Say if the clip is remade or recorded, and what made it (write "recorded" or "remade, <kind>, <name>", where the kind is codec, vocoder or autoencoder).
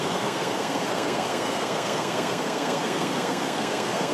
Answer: remade, codec, SNAC